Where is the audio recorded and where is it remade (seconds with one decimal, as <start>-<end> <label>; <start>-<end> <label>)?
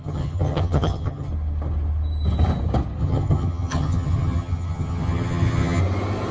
0.0-1.3 remade; 1.3-3.0 recorded; 3.0-5.8 remade; 5.8-6.3 recorded